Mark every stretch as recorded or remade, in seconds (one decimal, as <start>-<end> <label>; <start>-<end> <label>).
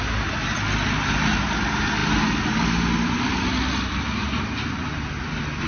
0.0-5.7 recorded